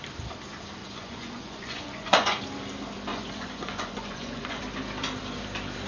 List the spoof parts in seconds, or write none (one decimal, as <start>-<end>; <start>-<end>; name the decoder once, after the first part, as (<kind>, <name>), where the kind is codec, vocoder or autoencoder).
0.8-2.4 (vocoder, Vocos); 3.1-4.6